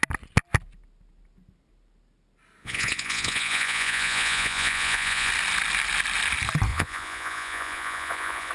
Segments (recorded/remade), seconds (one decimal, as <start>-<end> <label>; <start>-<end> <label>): 0.0-2.6 recorded; 2.6-5.3 remade; 5.3-6.7 recorded; 6.7-8.5 remade